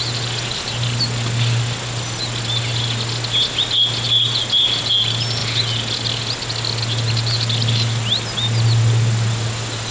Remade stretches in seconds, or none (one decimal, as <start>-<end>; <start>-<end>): none